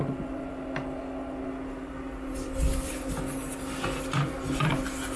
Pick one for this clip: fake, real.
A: real